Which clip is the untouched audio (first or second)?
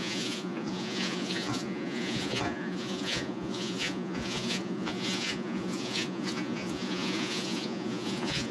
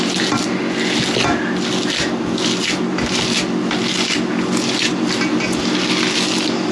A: second